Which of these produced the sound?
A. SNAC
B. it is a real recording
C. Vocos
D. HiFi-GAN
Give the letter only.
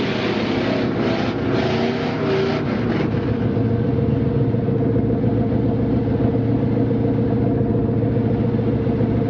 B